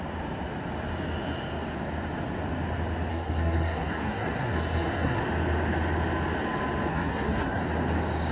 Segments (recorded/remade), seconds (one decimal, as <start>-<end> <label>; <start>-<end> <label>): 0.0-3.1 recorded; 3.1-5.2 remade; 5.2-6.9 recorded; 6.9-7.6 remade; 7.6-8.3 recorded